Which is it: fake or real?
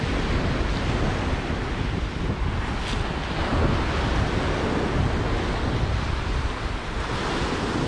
real